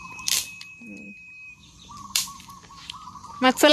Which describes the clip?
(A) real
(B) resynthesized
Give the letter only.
B